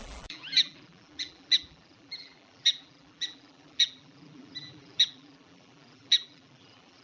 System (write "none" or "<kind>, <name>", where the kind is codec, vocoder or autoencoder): vocoder, BigVGAN v2